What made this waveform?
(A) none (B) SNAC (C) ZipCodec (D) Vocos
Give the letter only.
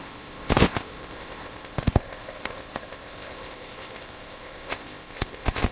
C